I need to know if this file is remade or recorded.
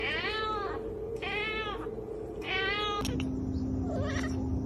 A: recorded